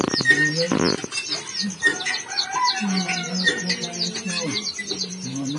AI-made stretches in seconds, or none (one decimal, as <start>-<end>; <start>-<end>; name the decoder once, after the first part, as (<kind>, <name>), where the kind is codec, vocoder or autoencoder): 1.9-5.6 (vocoder, BigVGAN v2)